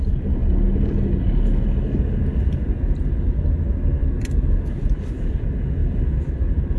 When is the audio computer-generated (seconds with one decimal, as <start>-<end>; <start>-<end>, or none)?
none